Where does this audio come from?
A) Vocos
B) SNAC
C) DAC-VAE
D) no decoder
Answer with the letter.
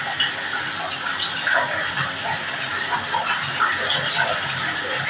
D